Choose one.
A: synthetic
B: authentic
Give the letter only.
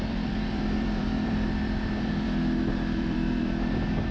A